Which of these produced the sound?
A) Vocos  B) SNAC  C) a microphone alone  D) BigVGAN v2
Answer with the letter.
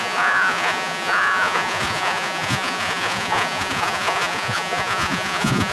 A